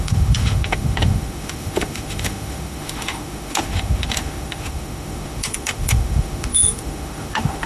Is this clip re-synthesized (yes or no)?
yes